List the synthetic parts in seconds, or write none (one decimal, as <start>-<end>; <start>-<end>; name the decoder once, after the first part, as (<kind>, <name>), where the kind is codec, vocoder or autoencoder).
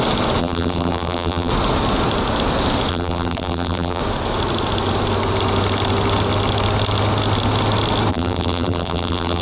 0.4-1.5 (vocoder, BigVGAN v2); 2.9-4.0; 8.1-9.4